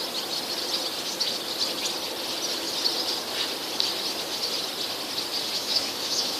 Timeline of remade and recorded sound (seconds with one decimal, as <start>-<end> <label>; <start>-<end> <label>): 0.0-5.6 recorded; 5.6-6.4 remade